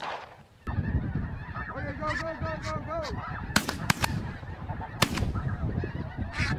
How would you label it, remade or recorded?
remade